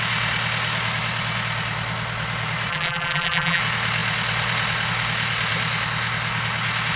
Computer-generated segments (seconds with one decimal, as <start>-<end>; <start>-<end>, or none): 2.7-3.6